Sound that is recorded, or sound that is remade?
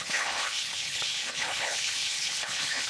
remade